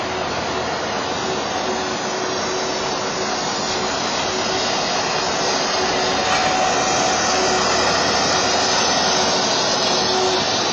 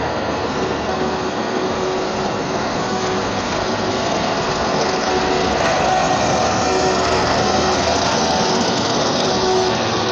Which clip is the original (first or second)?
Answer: first